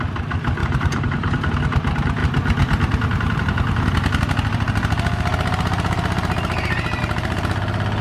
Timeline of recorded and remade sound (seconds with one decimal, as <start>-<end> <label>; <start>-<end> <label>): 0.0-0.6 recorded; 0.6-1.5 remade; 1.5-8.0 recorded